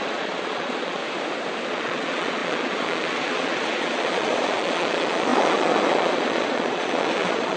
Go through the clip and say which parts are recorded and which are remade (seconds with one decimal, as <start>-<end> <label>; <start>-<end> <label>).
0.0-1.0 remade; 1.0-1.7 recorded; 1.7-7.6 remade